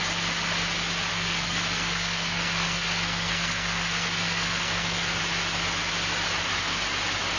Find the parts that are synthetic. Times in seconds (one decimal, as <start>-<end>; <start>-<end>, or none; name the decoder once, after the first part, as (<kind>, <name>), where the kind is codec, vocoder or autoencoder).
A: 1.1-5.2 (codec, SNAC)